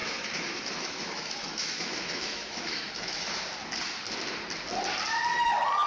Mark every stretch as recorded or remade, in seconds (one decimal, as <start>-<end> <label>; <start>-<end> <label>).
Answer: 0.0-3.4 remade; 3.4-5.9 recorded